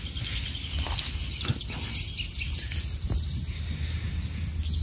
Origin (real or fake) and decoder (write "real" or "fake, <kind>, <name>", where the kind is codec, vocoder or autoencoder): real